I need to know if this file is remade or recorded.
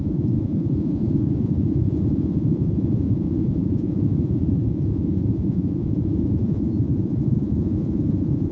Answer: remade